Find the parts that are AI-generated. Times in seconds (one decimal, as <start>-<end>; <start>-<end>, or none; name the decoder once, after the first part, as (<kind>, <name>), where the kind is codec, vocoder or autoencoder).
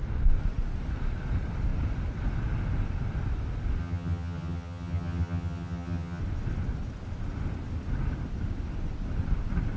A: 3.8-6.2 (vocoder, HiFi-GAN)